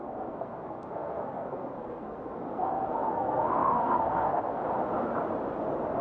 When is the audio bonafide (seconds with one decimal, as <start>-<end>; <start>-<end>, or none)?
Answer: 4.6-6.0